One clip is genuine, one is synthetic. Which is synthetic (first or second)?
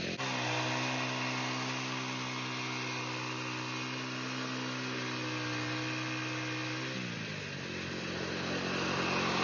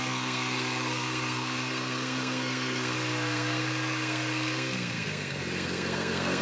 second